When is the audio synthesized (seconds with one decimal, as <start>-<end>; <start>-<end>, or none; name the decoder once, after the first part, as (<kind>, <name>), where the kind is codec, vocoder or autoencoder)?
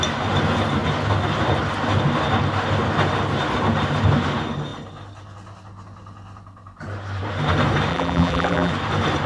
7.9-8.7 (vocoder, BigVGAN v2)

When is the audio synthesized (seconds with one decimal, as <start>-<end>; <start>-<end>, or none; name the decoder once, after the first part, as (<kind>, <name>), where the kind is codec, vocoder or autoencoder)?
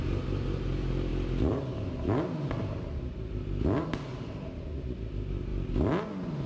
none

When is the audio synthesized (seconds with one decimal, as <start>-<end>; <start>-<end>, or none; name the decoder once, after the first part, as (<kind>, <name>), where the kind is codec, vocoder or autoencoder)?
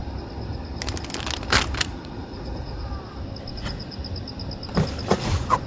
1.8-2.9 (vocoder, Vocos); 3.5-4.0; 5.1-5.7